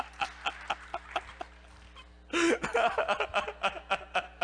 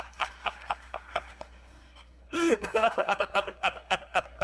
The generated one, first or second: second